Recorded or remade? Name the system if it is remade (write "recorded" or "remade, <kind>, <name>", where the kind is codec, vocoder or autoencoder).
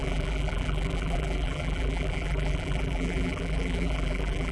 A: remade, vocoder, BigVGAN v2